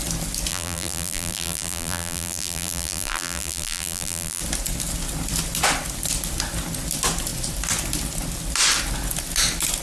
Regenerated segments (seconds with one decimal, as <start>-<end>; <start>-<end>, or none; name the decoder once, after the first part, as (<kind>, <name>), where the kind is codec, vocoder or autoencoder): 0.5-4.4 (vocoder, BigVGAN v2)

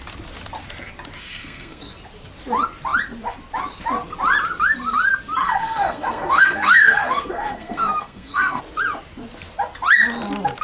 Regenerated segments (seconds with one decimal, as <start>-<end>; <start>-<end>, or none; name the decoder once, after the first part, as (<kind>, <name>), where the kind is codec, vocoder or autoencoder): 1.2-1.8 (codec, SNAC); 5.4-8.6

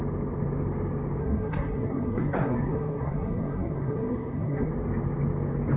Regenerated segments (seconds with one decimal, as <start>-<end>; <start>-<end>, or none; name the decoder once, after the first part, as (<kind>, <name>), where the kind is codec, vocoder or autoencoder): 1.2-4.7 (codec, SNAC)